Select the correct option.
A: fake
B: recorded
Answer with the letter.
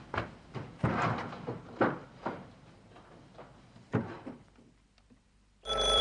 A